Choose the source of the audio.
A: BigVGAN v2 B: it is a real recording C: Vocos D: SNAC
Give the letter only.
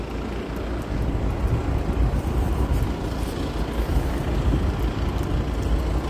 B